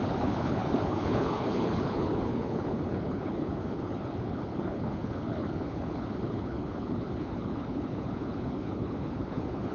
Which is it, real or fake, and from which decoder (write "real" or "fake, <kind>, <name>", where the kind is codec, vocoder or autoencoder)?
fake, codec, HILCodec